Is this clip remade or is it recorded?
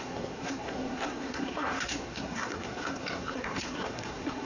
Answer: remade